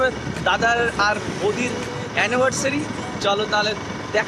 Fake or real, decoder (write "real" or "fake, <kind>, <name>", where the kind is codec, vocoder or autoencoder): real